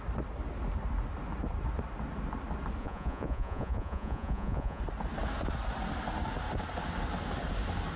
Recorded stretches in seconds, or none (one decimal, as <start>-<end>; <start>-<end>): 0.0-2.8; 4.8-8.0